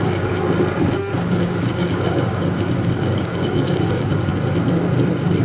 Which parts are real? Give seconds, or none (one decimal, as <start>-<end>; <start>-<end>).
0.0-1.1; 4.3-5.4